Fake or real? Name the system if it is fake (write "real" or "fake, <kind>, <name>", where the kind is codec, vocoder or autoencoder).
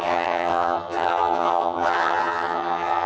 fake, vocoder, HiFi-GAN